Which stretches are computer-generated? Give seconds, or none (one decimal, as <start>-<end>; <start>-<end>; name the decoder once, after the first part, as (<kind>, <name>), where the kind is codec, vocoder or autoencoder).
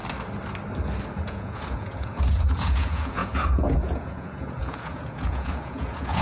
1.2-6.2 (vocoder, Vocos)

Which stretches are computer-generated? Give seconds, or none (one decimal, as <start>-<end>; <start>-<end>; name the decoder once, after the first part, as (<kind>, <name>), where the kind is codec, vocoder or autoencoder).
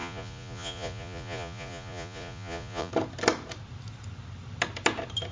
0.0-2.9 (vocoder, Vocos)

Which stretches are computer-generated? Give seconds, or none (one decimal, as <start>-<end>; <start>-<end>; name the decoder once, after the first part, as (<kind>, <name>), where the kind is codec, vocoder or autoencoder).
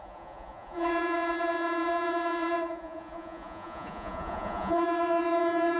0.0-5.8 (vocoder, Vocos)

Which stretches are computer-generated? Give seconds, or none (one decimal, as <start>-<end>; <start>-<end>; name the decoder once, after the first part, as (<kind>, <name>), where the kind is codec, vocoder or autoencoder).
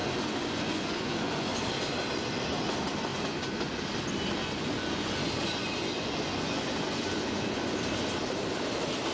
0.0-1.6 (vocoder, Vocos); 3.1-3.8; 4.4-7.8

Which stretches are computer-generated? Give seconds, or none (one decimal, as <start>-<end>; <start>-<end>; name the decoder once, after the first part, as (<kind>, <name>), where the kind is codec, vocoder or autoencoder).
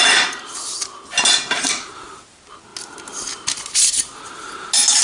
none